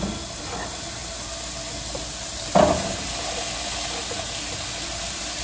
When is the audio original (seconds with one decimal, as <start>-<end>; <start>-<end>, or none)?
0.0-5.4